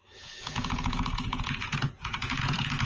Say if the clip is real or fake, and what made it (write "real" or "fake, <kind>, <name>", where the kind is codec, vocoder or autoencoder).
fake, vocoder, Vocos